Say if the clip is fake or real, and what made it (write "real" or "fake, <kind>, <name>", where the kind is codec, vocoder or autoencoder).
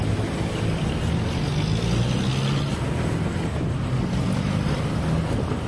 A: real